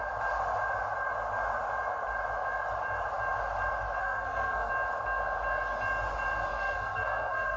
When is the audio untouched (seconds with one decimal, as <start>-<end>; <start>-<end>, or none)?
0.0-4.0; 4.7-6.5